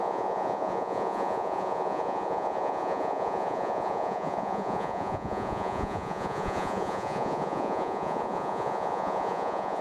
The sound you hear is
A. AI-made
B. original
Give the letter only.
A